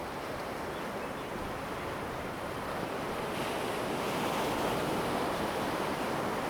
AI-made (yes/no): no